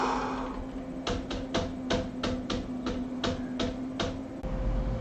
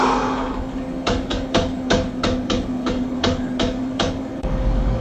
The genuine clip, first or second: first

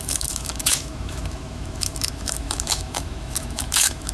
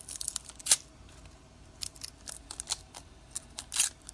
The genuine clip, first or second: second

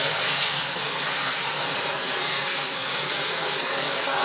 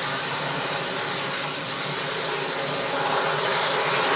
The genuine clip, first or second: second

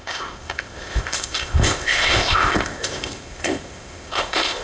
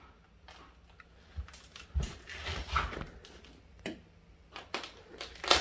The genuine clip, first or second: second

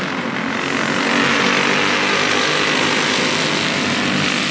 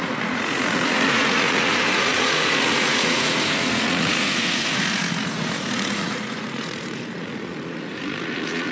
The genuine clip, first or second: first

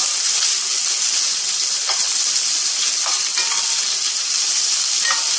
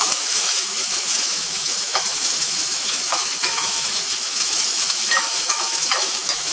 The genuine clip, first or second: first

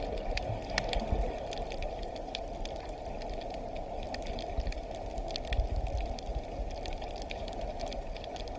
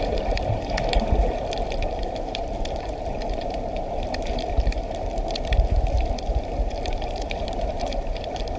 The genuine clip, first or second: first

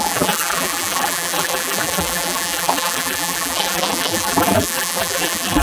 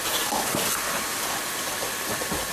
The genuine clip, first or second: second